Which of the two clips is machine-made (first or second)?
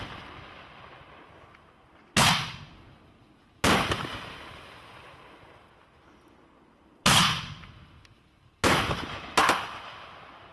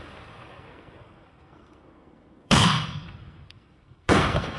second